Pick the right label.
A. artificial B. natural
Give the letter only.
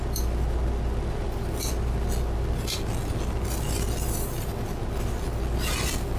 B